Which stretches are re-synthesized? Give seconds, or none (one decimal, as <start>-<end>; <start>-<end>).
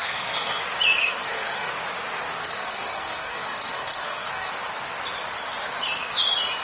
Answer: 0.0-0.6; 1.0-1.7; 2.4-4.5